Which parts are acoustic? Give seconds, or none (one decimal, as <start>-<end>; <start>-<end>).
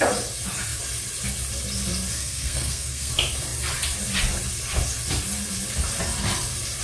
0.0-2.1; 3.1-6.8